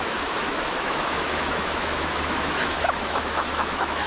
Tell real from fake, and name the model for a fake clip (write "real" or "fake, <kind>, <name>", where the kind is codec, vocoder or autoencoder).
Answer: fake, autoencoder, DAC-VAE